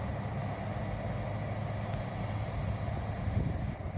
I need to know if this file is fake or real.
real